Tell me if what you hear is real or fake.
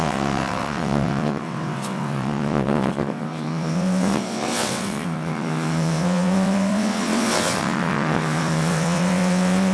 fake